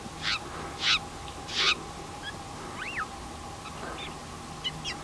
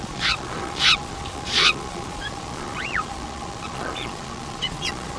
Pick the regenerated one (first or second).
second